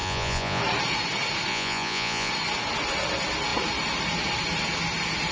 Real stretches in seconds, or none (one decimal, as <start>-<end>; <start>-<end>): 0.6-1.5; 2.3-5.3